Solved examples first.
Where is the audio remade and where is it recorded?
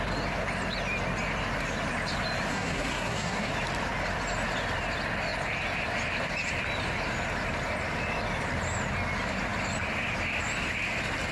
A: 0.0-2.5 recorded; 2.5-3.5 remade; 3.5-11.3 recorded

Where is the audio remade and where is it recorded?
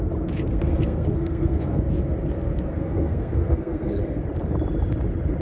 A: 0.0-0.5 recorded; 0.5-1.8 remade; 1.8-2.7 recorded; 2.7-4.2 remade; 4.2-5.4 recorded